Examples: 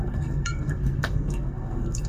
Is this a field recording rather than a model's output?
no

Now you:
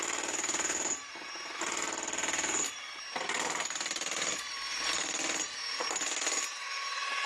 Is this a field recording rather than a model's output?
yes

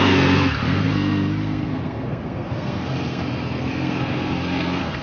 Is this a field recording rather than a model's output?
no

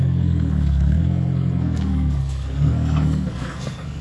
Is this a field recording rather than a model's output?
no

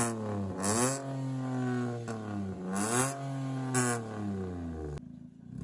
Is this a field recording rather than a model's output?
yes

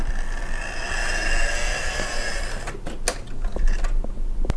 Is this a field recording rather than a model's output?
yes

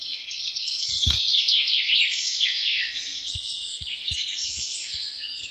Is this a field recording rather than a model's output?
no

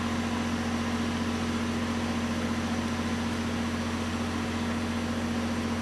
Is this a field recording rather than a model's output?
yes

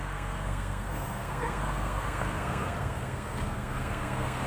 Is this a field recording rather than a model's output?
no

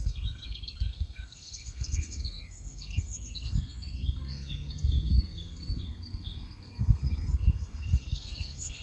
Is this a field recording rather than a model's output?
no